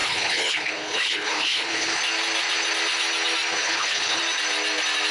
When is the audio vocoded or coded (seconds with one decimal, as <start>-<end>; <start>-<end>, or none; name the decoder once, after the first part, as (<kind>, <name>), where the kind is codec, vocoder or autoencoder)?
0.0-2.0 (codec, HILCodec); 3.6-4.2